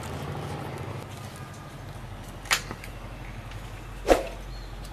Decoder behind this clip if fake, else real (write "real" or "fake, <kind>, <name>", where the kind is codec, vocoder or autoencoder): real